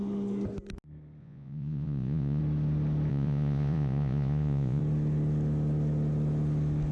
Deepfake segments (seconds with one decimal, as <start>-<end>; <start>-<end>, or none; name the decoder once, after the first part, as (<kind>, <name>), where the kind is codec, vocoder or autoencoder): 1.2-2.4 (vocoder, Vocos); 3.1-4.8